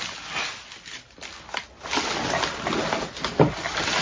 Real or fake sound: real